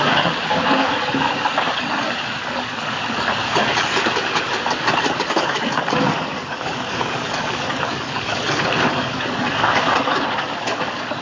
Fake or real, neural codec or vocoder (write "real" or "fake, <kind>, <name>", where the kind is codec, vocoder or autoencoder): fake, codec, DAC